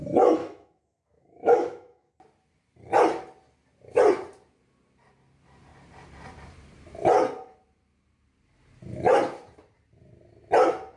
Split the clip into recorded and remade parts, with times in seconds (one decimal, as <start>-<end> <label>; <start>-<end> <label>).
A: 0.0-0.4 recorded; 0.4-2.1 remade; 2.1-11.0 recorded